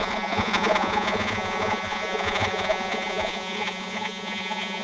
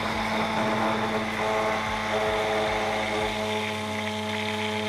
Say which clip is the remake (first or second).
first